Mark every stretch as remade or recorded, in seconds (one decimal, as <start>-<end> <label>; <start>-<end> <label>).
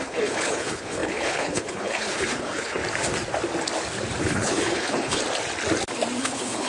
0.0-2.8 remade; 2.8-4.2 recorded; 4.2-5.2 remade; 5.2-6.2 recorded; 6.2-6.7 remade